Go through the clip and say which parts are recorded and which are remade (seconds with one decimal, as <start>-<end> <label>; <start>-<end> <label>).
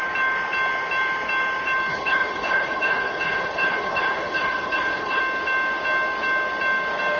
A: 0.0-1.9 recorded; 1.9-5.2 remade; 5.2-7.2 recorded